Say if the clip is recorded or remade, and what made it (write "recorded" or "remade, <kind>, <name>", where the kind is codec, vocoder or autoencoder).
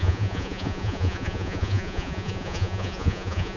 remade, vocoder, Vocos